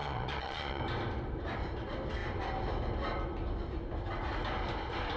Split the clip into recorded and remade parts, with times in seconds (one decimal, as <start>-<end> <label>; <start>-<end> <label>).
0.0-0.8 remade; 0.8-5.2 recorded